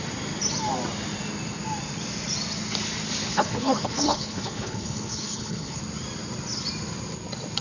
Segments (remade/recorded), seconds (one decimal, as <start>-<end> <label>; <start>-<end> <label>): 0.0-3.3 recorded; 3.3-5.8 remade; 5.8-7.6 recorded